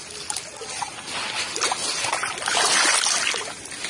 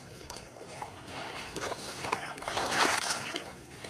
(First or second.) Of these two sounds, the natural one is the first